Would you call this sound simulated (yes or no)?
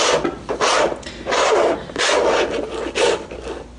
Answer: no